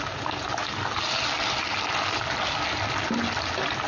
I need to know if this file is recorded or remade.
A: recorded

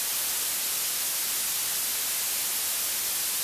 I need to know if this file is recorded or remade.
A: recorded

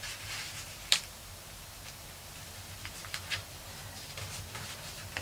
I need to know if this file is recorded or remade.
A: remade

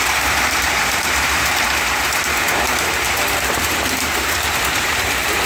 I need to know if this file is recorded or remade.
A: remade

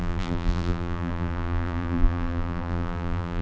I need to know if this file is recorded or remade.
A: remade